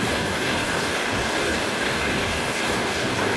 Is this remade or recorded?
remade